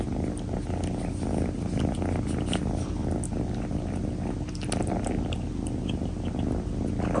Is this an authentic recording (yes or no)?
yes